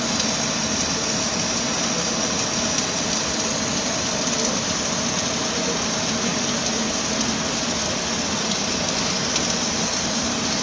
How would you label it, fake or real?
real